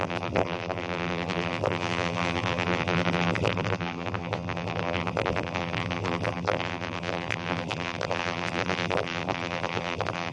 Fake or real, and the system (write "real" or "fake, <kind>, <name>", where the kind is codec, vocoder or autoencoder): fake, vocoder, BigVGAN v2